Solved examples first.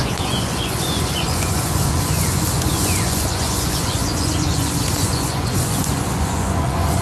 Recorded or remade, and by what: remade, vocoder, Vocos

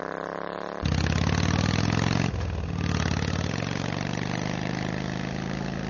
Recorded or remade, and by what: recorded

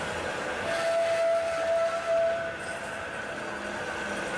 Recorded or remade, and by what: recorded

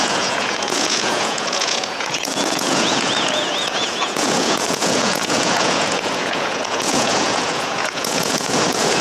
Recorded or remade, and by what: remade, vocoder, Vocos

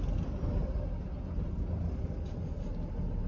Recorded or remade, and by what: recorded